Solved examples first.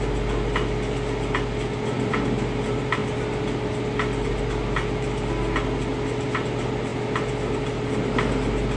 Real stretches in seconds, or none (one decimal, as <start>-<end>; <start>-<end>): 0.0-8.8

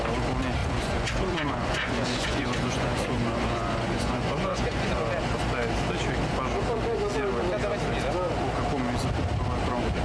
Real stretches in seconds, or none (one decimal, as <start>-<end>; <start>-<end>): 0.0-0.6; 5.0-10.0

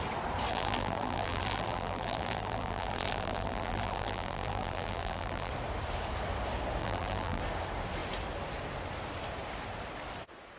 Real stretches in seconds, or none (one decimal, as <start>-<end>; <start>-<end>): 0.0-0.5; 5.5-6.8; 7.4-10.6